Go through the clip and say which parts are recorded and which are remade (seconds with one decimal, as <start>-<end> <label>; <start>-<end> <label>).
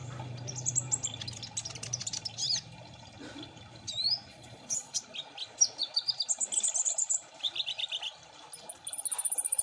0.0-4.3 recorded; 4.3-5.0 remade; 5.0-9.6 recorded